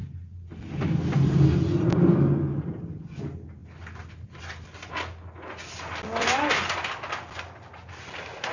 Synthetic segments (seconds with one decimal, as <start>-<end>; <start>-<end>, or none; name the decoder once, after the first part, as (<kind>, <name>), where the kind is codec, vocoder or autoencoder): none